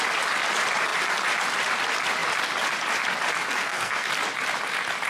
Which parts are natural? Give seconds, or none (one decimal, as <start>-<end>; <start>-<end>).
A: 0.0-3.6; 4.1-5.1